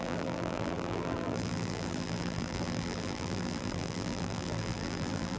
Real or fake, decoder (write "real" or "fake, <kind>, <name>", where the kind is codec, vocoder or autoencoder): fake, vocoder, BigVGAN v2